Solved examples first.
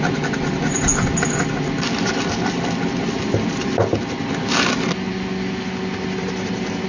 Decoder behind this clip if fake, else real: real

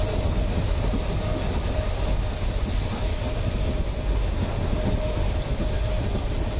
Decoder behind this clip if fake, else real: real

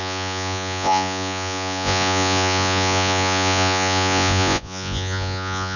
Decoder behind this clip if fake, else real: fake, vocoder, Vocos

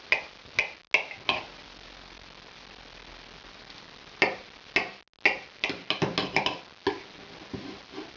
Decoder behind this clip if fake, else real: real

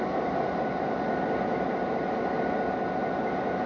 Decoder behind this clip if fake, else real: real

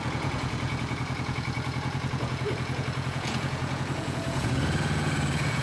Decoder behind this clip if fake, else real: fake, vocoder, Vocos